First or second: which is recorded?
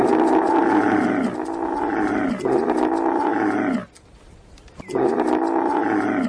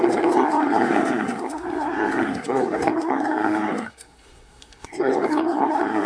first